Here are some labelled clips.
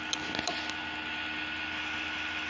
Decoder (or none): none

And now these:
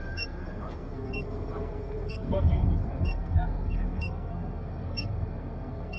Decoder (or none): codec, SNAC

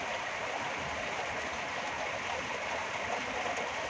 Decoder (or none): none